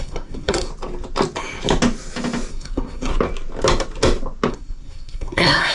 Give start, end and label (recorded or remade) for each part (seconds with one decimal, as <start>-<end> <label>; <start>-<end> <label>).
0.0-0.7 remade; 0.7-2.5 recorded; 2.5-3.1 remade; 3.1-4.5 recorded; 4.5-5.7 remade